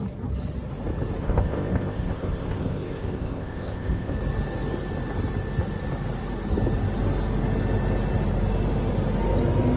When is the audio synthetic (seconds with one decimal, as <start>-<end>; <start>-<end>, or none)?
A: 1.2-4.1